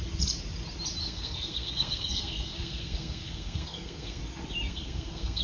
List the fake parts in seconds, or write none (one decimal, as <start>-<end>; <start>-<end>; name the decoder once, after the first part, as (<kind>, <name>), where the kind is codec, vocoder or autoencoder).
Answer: 1.0-4.2 (codec, SNAC); 4.7-5.4